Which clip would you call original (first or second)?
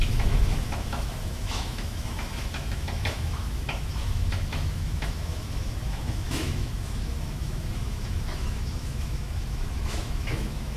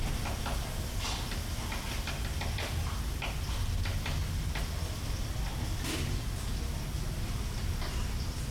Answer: second